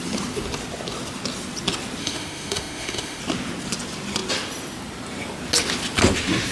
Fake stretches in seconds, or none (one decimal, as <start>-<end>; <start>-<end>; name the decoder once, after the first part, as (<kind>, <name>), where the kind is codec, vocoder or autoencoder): 2.0-3.2 (autoencoder, DAC-VAE)